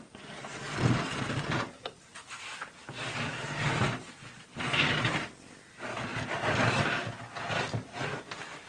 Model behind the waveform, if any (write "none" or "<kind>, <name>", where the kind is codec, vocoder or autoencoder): none